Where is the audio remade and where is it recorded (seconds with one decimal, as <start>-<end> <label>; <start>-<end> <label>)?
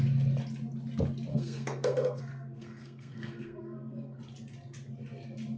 0.0-1.3 recorded; 1.3-4.2 remade; 4.2-5.6 recorded